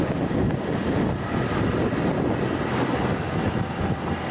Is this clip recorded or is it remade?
recorded